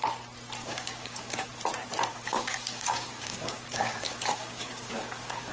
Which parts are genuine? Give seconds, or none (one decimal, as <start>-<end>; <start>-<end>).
0.0-0.6; 1.5-2.1

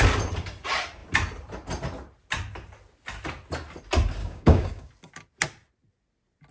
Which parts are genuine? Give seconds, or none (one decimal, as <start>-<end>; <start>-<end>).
0.0-4.2; 4.9-6.5

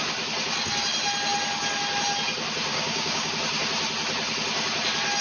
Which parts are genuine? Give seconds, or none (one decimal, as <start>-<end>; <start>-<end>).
0.0-2.7; 3.3-5.2

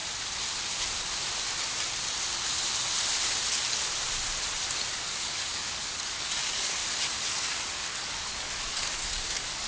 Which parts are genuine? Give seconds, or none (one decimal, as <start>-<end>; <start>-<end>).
0.0-4.9; 6.8-7.3